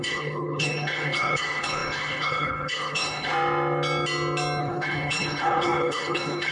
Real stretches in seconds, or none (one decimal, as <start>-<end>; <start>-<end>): 3.3-4.6